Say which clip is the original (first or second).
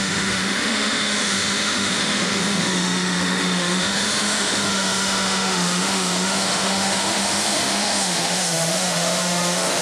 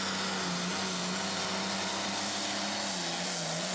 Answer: second